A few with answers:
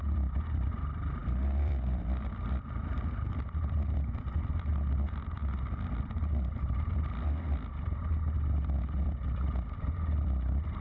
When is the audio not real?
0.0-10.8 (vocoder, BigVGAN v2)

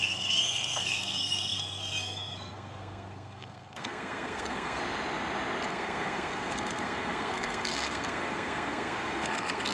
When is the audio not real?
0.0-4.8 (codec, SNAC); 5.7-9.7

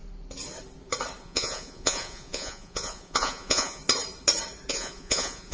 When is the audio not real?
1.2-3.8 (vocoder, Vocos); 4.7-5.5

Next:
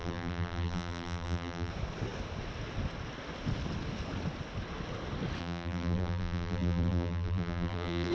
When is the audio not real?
0.0-1.7 (vocoder, BigVGAN v2); 5.4-8.1

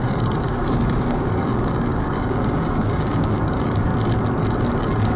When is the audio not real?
0.0-3.9 (codec, DAC); 4.8-5.2

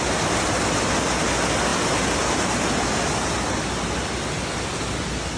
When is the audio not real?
none